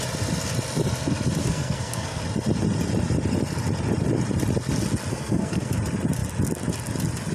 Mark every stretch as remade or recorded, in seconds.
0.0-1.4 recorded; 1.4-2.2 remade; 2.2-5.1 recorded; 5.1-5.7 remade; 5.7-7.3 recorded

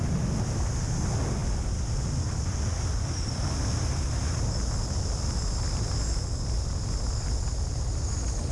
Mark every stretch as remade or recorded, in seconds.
0.0-8.5 recorded

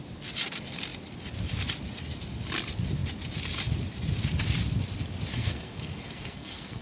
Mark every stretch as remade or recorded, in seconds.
0.0-5.3 recorded; 5.3-6.8 remade

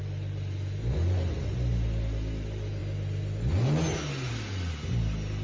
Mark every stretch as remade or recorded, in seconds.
0.0-5.4 recorded

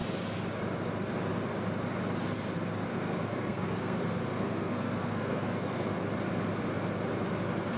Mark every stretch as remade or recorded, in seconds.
0.0-2.9 recorded; 2.9-6.0 remade; 6.0-7.8 recorded

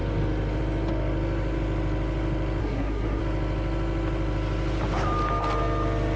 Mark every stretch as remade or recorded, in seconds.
0.0-2.6 recorded; 2.6-3.2 remade; 3.2-6.2 recorded

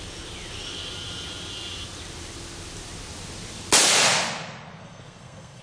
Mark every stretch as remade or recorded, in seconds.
0.0-4.8 recorded; 4.8-5.6 remade

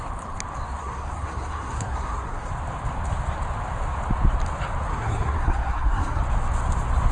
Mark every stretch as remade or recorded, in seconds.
0.0-0.8 recorded; 0.8-2.5 remade; 2.5-4.9 recorded; 4.9-6.2 remade; 6.2-7.1 recorded